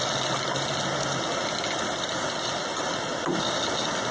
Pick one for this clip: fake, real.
real